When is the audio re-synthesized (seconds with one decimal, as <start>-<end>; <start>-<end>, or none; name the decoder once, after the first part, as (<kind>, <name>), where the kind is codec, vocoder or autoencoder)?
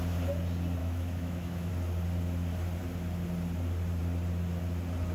0.8-1.7 (autoencoder, DAC-VAE)